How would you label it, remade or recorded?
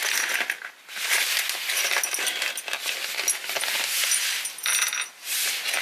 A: recorded